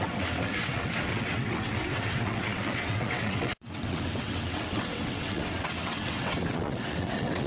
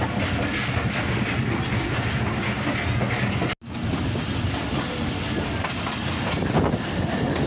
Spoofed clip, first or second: first